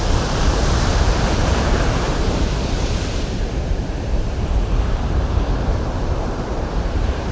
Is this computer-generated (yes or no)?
yes